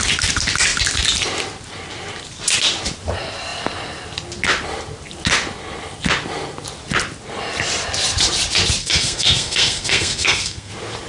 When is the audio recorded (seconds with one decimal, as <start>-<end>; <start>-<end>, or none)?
0.0-8.8; 10.7-11.1